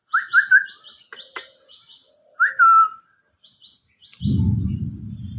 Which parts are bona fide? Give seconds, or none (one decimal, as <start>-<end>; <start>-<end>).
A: 0.0-5.4